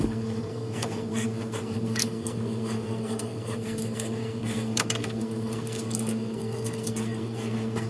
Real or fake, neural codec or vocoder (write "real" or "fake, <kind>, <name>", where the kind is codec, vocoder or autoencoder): fake, codec, SNAC